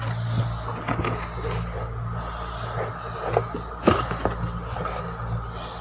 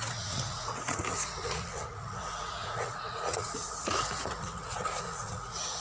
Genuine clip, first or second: first